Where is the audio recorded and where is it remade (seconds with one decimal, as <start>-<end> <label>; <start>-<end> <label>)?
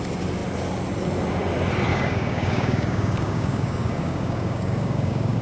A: 0.0-1.9 recorded; 1.9-5.4 remade